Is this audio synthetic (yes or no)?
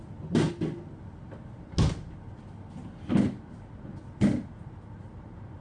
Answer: no